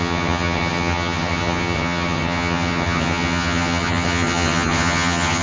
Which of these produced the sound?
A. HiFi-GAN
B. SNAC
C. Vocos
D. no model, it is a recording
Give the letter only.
A